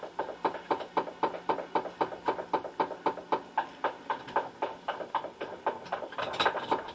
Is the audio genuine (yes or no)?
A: yes